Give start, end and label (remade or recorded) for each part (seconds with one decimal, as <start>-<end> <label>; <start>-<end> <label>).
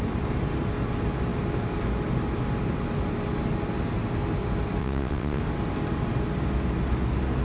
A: 0.0-4.8 recorded; 4.8-5.4 remade; 5.4-7.4 recorded